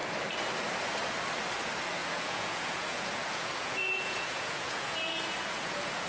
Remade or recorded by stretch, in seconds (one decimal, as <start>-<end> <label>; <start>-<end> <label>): 0.0-2.0 recorded; 2.0-6.1 remade